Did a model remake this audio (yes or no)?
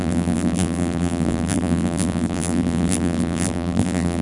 yes